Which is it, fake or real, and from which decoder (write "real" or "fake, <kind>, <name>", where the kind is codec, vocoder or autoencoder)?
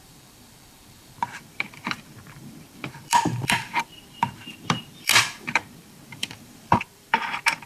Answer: fake, vocoder, BigVGAN v2